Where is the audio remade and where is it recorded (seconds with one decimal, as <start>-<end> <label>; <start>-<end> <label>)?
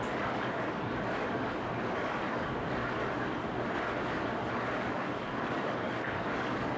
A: 0.0-3.0 remade; 3.0-4.5 recorded; 4.5-6.8 remade